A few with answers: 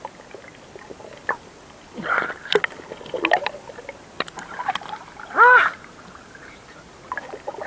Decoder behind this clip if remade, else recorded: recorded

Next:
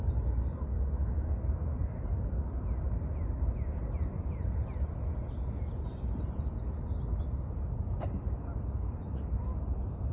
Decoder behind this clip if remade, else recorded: recorded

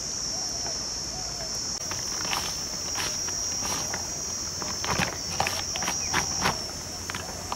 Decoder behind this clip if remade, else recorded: recorded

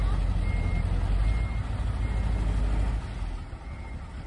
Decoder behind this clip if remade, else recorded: recorded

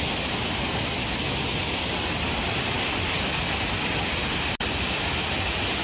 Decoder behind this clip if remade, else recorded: recorded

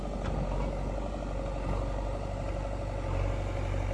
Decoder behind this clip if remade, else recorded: recorded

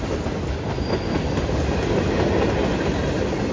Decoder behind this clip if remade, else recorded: recorded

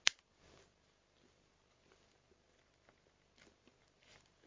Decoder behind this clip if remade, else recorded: recorded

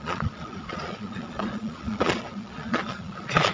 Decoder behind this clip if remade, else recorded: remade, vocoder, Vocos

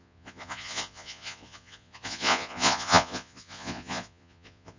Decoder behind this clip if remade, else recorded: remade, vocoder, Vocos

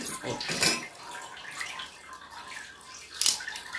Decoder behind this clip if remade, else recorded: recorded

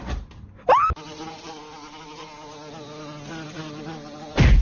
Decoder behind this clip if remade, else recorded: recorded